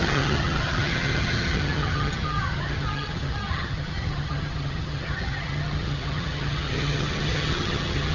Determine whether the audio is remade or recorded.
remade